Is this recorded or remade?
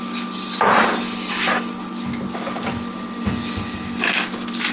recorded